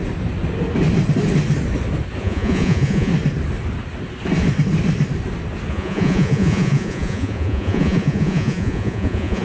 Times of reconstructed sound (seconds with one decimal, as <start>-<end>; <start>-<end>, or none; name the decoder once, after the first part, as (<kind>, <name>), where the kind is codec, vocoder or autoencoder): 2.2-3.1 (vocoder, Vocos); 5.7-9.4

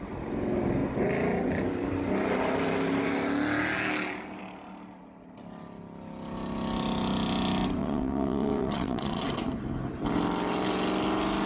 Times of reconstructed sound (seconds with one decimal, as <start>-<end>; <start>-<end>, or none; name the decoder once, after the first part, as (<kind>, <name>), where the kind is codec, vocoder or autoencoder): 7.8-9.2 (vocoder, WaveNeXt)

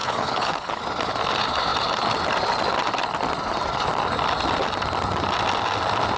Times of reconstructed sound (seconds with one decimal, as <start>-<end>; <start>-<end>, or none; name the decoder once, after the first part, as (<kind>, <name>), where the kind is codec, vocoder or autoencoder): 0.0-0.8 (codec, HILCodec)

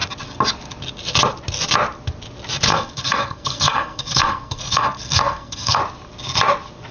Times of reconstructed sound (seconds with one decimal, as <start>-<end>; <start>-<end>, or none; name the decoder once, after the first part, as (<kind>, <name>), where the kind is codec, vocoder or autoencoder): 2.7-5.8 (codec, SNAC)

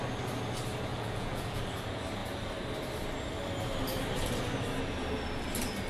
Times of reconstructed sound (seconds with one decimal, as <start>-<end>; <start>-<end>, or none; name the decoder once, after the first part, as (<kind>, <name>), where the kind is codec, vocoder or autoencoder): 0.9-1.6 (vocoder, Vocos)